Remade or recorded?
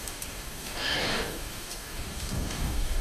remade